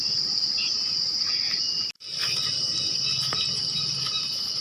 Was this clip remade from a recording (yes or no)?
no